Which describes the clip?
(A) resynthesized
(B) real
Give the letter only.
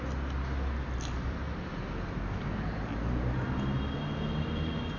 B